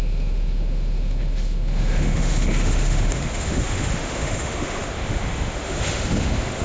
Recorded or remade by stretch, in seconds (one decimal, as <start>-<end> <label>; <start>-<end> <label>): 0.0-6.6 remade